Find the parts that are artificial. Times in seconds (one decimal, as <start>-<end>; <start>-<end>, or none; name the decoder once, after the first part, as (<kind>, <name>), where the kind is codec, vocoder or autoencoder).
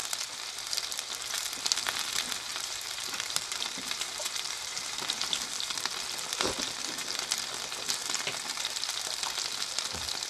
2.5-5.9 (vocoder, BigVGAN v2)